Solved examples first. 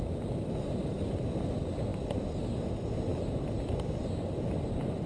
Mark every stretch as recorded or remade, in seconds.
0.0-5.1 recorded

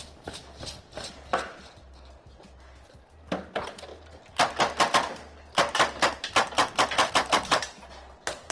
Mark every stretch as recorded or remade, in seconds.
0.0-8.5 recorded

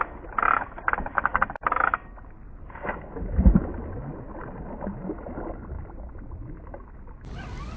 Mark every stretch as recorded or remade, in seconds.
0.0-7.8 recorded

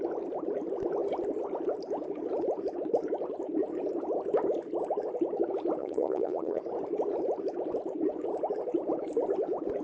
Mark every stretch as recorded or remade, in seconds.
0.0-5.8 recorded; 5.8-6.6 remade; 6.6-9.8 recorded

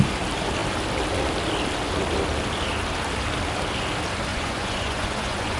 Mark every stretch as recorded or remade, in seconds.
0.0-4.3 recorded; 4.3-5.6 remade